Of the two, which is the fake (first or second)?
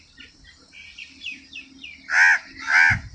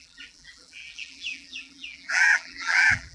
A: second